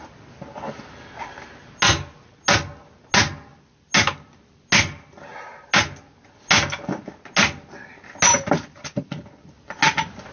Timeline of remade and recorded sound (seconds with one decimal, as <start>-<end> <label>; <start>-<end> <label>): 0.0-10.3 recorded